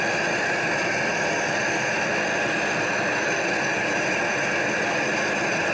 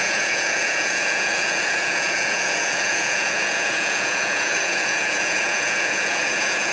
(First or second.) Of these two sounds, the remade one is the second